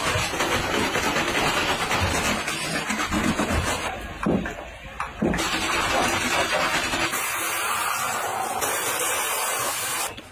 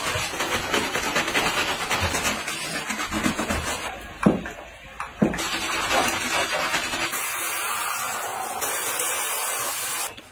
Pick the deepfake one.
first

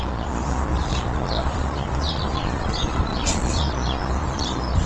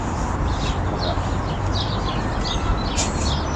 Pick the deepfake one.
first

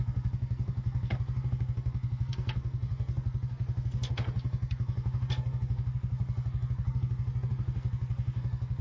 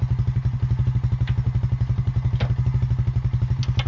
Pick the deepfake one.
first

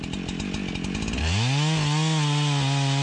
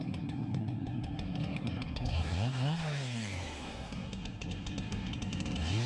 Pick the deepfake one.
second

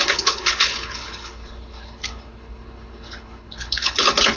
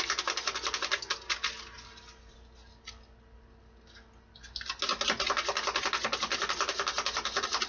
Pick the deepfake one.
first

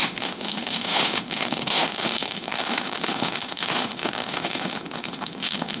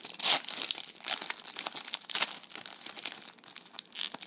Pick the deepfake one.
first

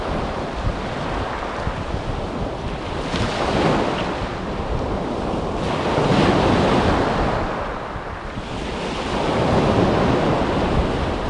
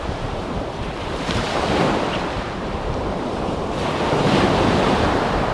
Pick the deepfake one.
second